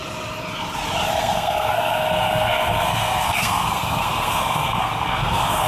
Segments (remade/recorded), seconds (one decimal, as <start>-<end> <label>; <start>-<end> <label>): 0.0-1.1 recorded; 1.1-5.7 remade

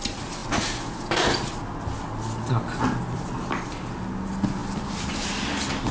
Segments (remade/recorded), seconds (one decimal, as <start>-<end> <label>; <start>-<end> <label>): 0.0-5.9 recorded

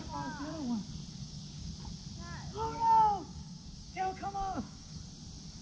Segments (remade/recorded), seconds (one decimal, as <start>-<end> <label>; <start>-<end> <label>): 0.0-1.2 recorded; 1.2-1.7 remade; 1.7-3.3 recorded; 3.3-5.0 remade; 5.0-5.6 recorded